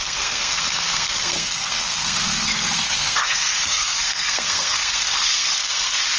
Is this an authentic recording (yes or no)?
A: no